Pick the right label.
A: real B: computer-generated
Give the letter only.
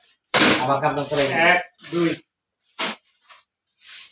A